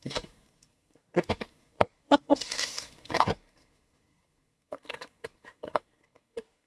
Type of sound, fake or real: fake